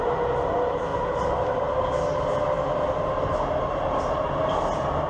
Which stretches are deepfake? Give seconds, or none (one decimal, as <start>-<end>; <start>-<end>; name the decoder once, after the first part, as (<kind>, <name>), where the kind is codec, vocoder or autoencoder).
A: none